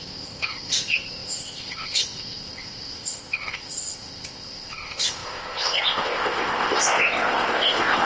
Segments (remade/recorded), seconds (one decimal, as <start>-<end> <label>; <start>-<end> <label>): 0.0-8.0 remade